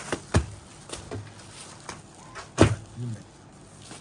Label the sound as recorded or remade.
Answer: recorded